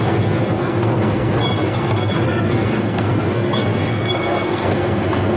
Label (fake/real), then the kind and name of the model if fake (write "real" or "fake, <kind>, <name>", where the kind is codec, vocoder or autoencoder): fake, codec, SNAC